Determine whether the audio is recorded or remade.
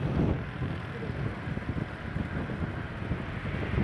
recorded